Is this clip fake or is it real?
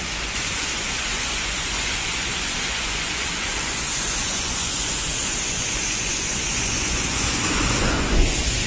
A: fake